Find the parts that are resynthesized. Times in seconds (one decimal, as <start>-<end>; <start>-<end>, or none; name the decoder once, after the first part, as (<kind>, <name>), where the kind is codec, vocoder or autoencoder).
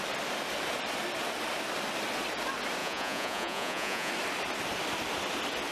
2.8-4.1 (vocoder, Vocos)